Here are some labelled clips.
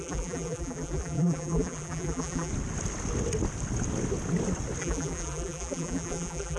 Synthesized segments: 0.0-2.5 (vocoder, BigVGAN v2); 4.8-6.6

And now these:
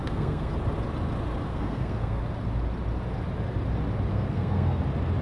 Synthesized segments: 0.0-0.5 (codec, SNAC); 1.5-2.2; 4.1-4.8